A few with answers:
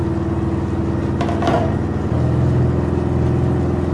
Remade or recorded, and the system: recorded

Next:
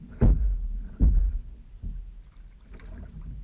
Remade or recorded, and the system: recorded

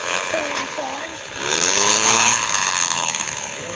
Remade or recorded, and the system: remade, codec, HILCodec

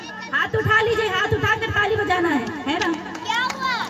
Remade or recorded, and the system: remade, vocoder, Vocos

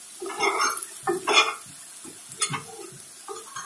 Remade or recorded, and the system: recorded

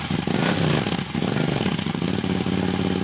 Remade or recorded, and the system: recorded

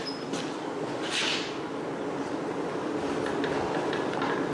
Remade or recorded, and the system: recorded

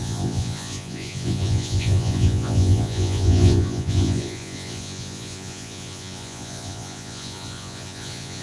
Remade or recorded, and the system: remade, vocoder, Vocos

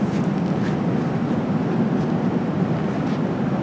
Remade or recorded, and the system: recorded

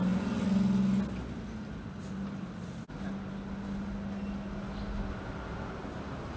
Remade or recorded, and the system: recorded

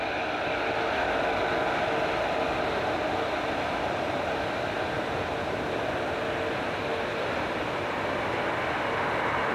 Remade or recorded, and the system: recorded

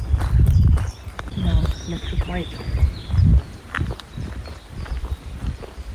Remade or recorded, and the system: remade, vocoder, BigVGAN v2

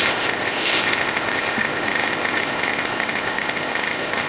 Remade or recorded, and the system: remade, codec, ZipCodec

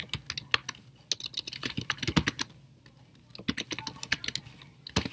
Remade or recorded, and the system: recorded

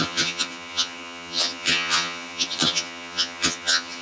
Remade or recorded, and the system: remade, vocoder, HiFi-GAN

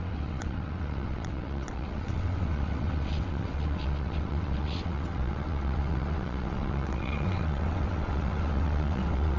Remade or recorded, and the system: remade, vocoder, WaveNeXt